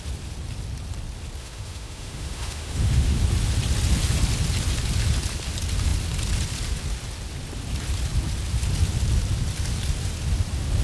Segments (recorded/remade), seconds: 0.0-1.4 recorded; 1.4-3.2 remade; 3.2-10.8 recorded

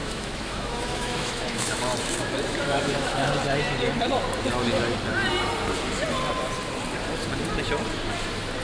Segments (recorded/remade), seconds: 0.0-3.3 remade; 3.3-8.6 recorded